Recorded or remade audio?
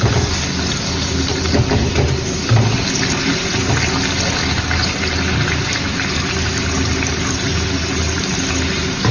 recorded